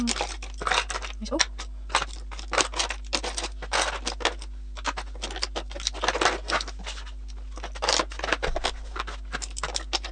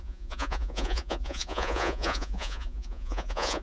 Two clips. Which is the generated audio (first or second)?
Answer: second